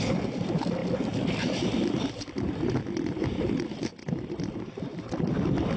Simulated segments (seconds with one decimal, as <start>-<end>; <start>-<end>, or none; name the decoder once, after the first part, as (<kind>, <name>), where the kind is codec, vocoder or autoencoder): 4.0-5.0 (vocoder, BigVGAN v2)